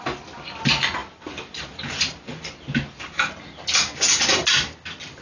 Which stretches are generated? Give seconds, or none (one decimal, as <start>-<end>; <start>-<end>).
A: none